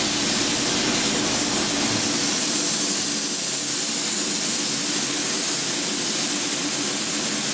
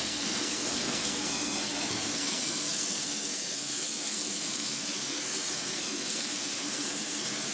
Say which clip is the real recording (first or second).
first